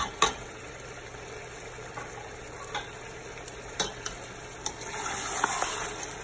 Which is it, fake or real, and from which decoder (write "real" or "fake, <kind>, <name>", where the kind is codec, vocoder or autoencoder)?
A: real